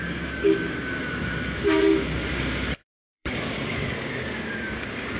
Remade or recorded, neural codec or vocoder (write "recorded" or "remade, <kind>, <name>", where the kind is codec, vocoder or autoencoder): remade, codec, DAC